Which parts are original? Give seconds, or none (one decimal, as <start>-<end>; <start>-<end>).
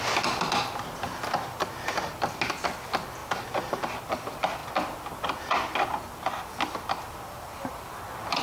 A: 0.0-8.4